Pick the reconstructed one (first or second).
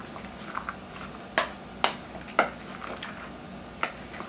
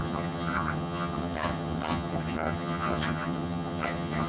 second